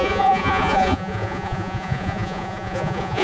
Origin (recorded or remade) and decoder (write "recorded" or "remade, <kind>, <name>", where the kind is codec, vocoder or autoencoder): remade, vocoder, Vocos